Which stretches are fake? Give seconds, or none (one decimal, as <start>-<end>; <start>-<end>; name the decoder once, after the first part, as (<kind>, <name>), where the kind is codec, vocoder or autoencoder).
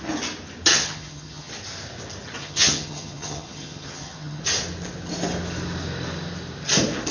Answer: 0.7-1.5 (vocoder, HiFi-GAN); 2.4-4.4